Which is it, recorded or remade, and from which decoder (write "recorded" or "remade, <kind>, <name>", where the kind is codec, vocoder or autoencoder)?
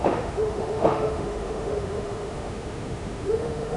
remade, autoencoder, DAC-VAE